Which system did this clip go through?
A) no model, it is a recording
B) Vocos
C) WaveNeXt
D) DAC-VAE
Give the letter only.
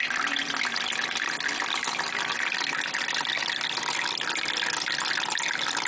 A